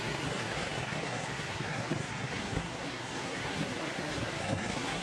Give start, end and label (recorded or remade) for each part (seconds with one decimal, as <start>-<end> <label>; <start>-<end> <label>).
0.0-5.0 remade